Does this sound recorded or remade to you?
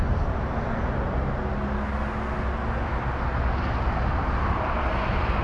recorded